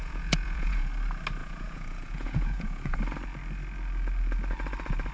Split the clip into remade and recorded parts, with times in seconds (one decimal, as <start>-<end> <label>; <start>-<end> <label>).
0.0-0.9 remade; 0.9-1.4 recorded; 1.4-3.0 remade; 3.0-5.1 recorded